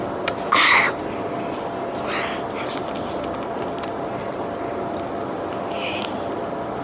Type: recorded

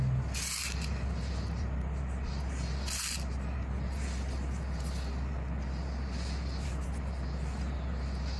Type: recorded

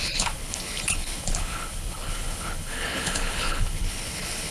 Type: remade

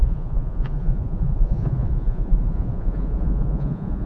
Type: remade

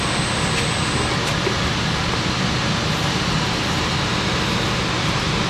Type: recorded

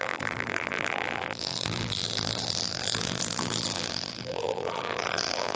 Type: remade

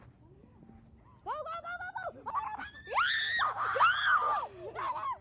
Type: recorded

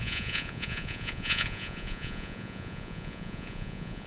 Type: remade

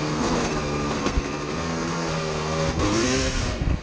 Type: remade